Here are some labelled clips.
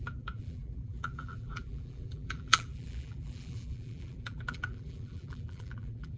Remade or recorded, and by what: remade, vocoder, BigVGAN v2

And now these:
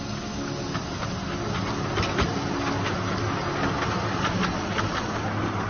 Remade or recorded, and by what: recorded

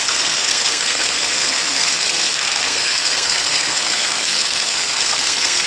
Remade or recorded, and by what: remade, codec, SNAC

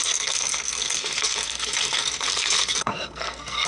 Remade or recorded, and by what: remade, codec, SNAC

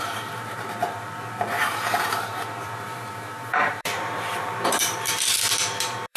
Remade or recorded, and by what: remade, vocoder, BigVGAN v2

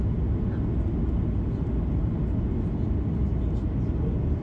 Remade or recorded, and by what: recorded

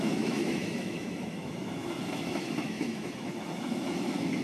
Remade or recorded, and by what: remade, autoencoder, DAC-VAE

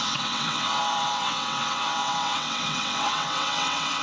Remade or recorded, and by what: remade, vocoder, WaveNeXt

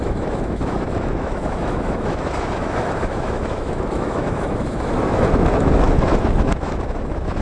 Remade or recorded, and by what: remade, autoencoder, DAC-VAE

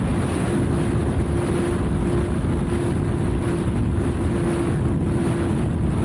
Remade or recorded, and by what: recorded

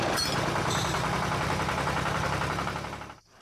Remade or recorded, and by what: remade, vocoder, BigVGAN v2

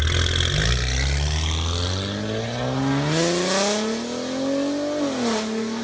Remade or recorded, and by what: recorded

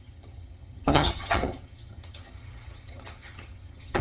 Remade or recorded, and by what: remade, vocoder, HiFi-GAN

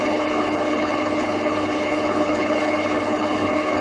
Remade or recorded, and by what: remade, codec, HILCodec